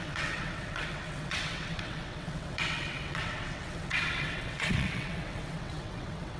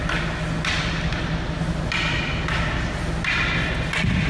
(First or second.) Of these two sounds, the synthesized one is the first